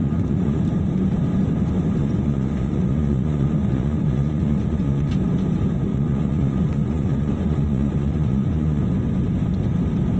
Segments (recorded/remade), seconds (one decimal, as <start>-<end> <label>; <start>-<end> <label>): 0.0-0.6 remade; 0.6-2.0 recorded; 2.0-5.1 remade; 5.1-5.9 recorded; 5.9-8.8 remade; 8.8-10.2 recorded

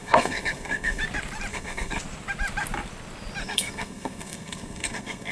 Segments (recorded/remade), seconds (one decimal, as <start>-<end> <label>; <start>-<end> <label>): 0.0-1.0 remade; 1.0-1.5 recorded; 1.5-2.0 remade; 2.0-3.4 recorded; 3.4-5.3 remade

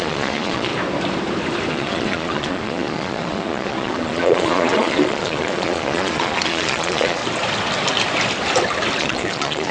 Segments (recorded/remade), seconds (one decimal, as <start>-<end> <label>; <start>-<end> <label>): 0.0-0.7 remade; 0.7-1.7 recorded; 1.7-7.2 remade; 7.2-9.0 recorded; 9.0-9.7 remade

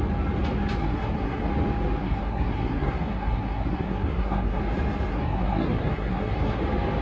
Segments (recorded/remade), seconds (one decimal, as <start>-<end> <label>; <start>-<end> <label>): 0.0-0.8 recorded; 0.8-1.5 remade; 1.5-2.0 recorded; 2.0-4.6 remade; 4.6-5.1 recorded; 5.1-6.6 remade; 6.6-7.0 recorded

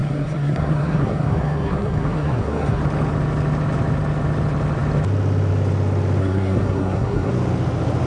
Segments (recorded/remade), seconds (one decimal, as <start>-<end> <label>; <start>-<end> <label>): 0.0-2.8 remade; 2.8-6.2 recorded; 6.2-7.3 remade; 7.3-8.1 recorded

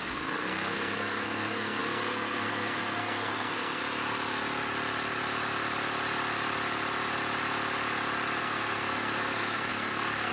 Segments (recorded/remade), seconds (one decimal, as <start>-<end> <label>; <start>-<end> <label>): 0.0-3.8 remade; 3.8-8.4 recorded; 8.4-10.3 remade